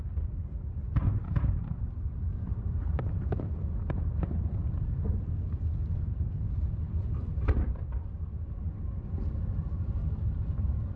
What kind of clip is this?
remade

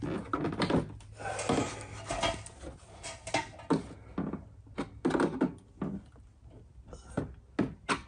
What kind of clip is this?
recorded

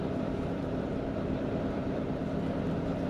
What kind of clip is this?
remade